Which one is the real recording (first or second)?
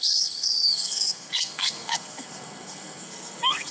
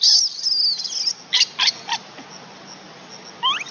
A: second